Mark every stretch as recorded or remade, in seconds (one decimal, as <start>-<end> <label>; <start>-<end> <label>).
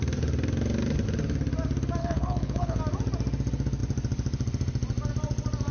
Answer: 0.0-2.0 recorded; 2.0-2.8 remade; 2.8-5.7 recorded